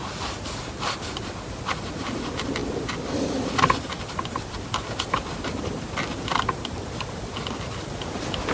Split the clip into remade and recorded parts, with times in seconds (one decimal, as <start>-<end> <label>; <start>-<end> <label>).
0.0-8.5 recorded